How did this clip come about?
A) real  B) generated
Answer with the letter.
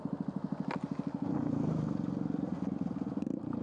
A